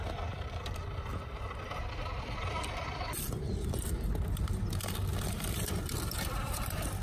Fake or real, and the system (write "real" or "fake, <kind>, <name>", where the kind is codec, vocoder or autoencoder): real